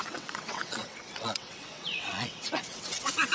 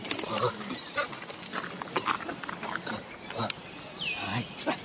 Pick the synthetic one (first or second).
first